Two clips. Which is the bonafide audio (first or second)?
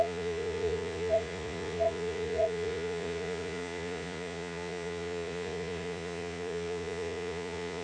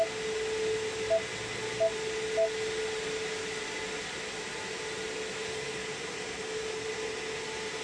second